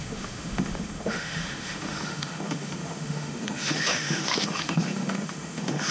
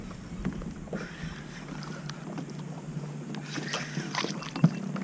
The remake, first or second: first